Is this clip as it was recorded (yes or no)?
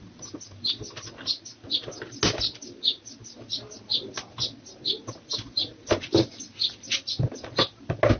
yes